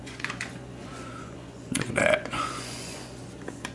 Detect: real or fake fake